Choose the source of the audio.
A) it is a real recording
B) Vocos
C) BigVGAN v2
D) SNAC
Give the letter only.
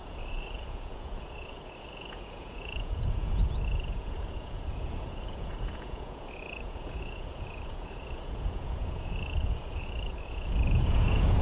B